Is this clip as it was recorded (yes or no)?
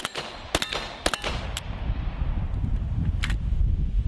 yes